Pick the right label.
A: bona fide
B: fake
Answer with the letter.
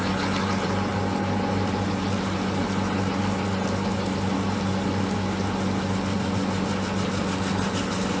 A